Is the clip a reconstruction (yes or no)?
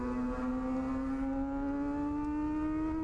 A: no